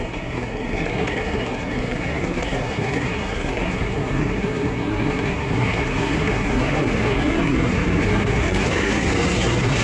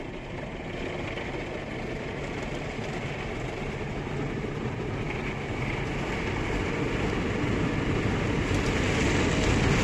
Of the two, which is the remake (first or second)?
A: first